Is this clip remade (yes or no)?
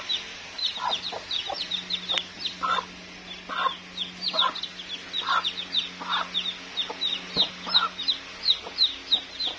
no